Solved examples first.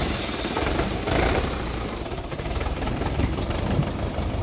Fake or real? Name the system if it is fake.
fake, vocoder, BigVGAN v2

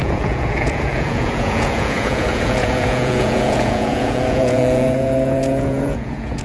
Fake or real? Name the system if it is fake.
fake, vocoder, Vocos